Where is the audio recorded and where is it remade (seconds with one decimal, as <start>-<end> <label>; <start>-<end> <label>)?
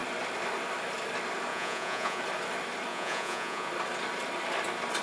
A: 0.0-1.5 recorded; 1.5-2.2 remade; 2.2-2.9 recorded; 2.9-3.7 remade; 3.7-5.0 recorded